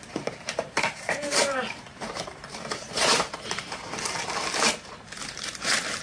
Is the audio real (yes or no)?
no